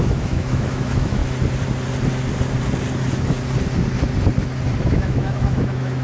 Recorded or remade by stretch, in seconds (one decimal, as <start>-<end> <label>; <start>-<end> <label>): 0.0-1.2 remade; 1.2-4.8 recorded; 4.8-6.0 remade